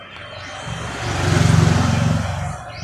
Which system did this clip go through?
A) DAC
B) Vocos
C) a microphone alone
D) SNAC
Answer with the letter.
C